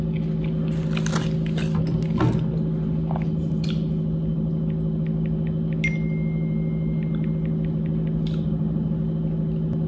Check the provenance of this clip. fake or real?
real